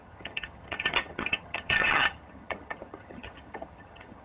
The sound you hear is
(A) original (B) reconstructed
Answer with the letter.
B